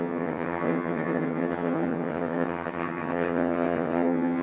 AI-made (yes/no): yes